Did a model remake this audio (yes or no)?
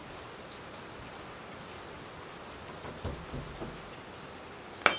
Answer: no